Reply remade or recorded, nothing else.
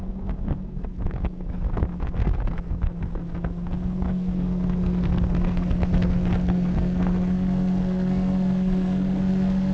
remade